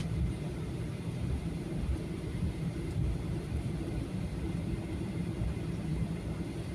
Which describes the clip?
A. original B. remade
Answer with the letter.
B